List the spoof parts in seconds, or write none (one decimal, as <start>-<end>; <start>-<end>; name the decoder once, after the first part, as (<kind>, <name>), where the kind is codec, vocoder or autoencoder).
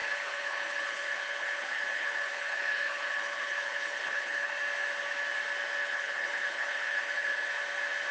0.0-4.5 (codec, HILCodec); 5.8-7.5